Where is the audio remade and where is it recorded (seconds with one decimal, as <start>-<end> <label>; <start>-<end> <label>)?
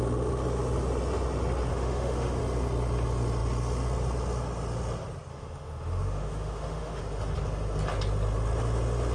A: 0.0-1.7 recorded; 1.7-2.4 remade; 2.4-5.3 recorded; 5.3-7.0 remade; 7.0-9.1 recorded